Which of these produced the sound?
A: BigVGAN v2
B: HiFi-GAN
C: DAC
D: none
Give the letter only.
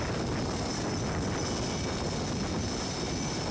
D